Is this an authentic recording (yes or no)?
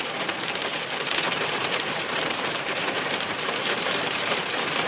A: no